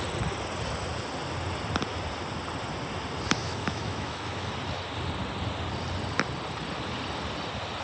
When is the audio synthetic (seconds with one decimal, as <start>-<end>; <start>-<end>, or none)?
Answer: 3.4-4.5